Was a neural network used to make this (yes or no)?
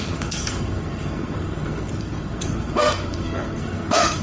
yes